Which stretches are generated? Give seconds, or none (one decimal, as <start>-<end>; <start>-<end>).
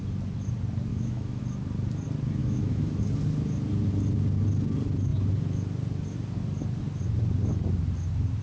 0.9-1.4; 2.4-3.0